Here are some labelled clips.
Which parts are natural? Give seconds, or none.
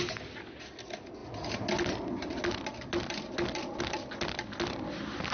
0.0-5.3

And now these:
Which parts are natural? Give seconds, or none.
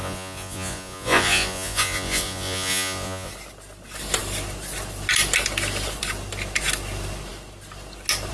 3.3-8.3